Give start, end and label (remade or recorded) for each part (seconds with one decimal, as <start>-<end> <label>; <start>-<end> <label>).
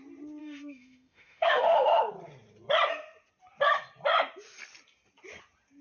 0.0-0.4 recorded; 0.4-2.0 remade; 2.0-5.8 recorded